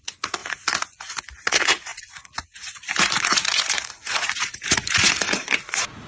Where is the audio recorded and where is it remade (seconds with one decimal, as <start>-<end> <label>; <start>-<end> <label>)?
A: 0.0-6.1 remade